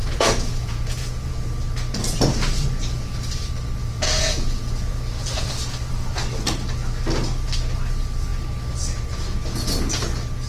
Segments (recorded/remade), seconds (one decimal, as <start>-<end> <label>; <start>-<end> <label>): 0.0-1.3 remade; 1.3-3.8 recorded; 3.8-5.5 remade; 5.5-10.5 recorded

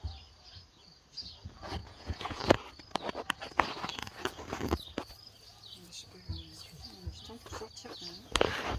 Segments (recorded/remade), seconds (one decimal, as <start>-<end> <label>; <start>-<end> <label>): 0.0-1.8 recorded; 1.8-2.4 remade; 2.4-8.8 recorded

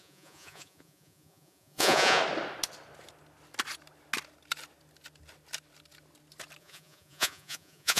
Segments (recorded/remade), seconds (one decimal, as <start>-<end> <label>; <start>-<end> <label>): 0.0-2.2 remade; 2.2-6.6 recorded; 6.6-8.0 remade

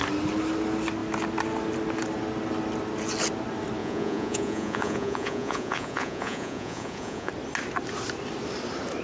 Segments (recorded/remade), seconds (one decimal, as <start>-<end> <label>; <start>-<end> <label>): 0.0-3.8 recorded; 3.8-7.3 remade; 7.3-9.0 recorded

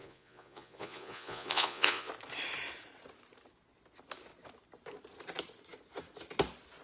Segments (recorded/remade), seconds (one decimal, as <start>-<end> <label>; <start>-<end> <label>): 0.0-2.1 remade; 2.1-6.8 recorded